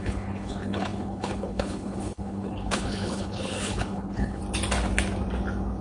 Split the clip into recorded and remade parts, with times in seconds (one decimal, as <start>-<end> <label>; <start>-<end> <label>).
0.0-4.4 remade; 4.4-5.8 recorded